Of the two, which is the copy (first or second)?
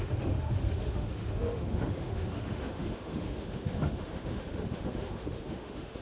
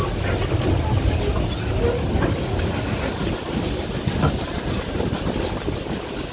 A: first